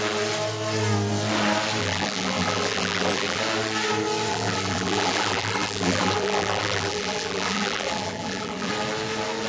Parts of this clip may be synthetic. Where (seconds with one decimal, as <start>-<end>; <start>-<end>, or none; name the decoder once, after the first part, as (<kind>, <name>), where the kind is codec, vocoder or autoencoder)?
1.8-3.4 (vocoder, BigVGAN v2); 4.3-8.7